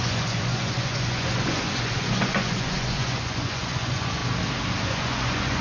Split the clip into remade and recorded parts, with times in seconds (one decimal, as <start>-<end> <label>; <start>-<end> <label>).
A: 0.0-4.2 remade; 4.2-4.9 recorded; 4.9-5.6 remade